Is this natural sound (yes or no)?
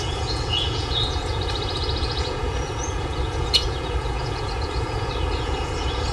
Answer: no